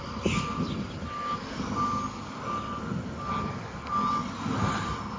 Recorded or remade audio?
recorded